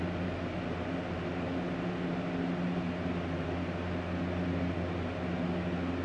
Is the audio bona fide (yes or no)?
yes